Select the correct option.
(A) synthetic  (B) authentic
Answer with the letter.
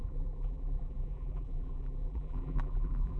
A